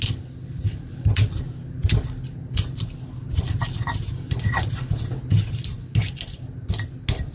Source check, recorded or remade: recorded